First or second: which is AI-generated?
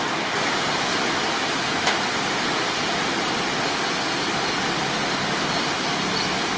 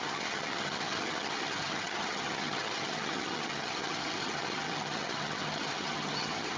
second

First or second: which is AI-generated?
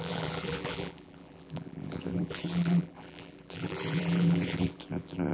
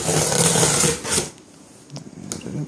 first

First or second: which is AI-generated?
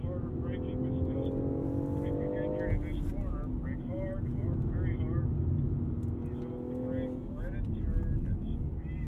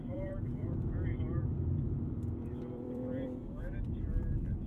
second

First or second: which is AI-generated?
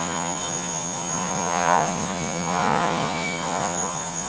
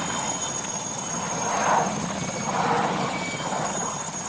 first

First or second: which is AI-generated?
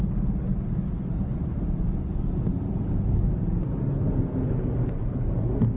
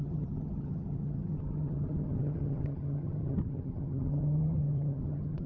second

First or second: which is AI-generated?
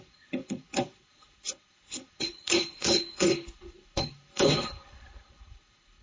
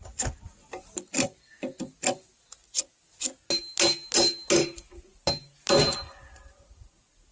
first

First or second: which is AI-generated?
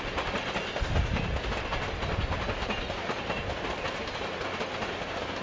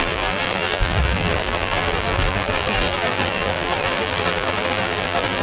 second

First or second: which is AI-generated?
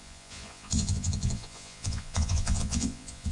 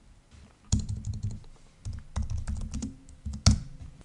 first